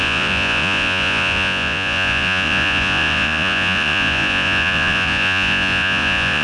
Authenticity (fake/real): fake